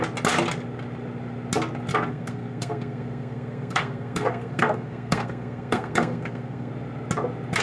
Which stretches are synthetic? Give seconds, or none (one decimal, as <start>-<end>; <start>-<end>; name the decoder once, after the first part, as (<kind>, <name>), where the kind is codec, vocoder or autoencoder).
2.1-6.7 (codec, SNAC)